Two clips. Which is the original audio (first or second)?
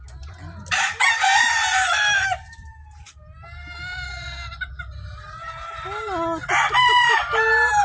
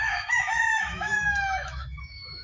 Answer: first